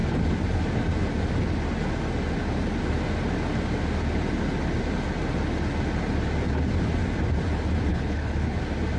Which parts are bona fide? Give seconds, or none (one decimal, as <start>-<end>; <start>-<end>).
0.0-7.9; 8.6-9.0